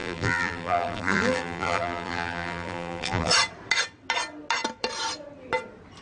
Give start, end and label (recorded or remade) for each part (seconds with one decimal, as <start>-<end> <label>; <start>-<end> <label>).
0.0-3.3 remade; 3.3-6.0 recorded